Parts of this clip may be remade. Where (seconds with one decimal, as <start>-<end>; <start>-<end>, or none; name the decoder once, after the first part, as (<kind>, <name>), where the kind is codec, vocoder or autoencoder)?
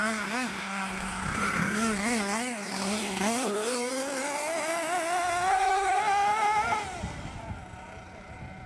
0.0-3.9 (codec, SNAC); 5.5-6.0